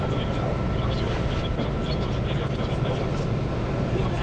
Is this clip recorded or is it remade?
recorded